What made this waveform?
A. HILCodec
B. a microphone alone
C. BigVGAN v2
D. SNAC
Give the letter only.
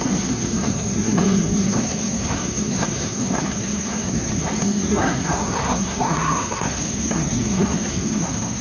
D